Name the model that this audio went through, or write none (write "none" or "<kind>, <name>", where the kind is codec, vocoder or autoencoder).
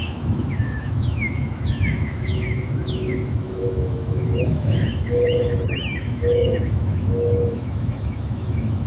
autoencoder, DAC-VAE